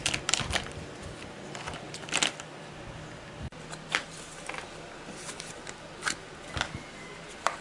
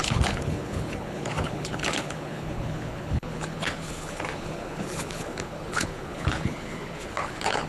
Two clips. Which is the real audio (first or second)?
first